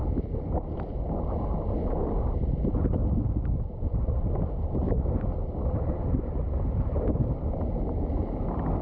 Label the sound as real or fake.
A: real